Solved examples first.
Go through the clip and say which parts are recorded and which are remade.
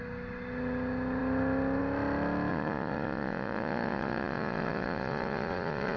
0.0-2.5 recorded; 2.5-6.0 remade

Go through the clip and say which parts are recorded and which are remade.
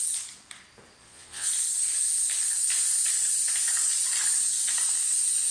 0.0-1.0 recorded; 1.0-1.5 remade; 1.5-5.5 recorded